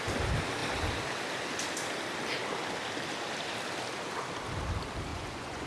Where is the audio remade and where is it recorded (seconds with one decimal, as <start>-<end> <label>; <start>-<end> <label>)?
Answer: 0.0-5.1 recorded; 5.1-5.7 remade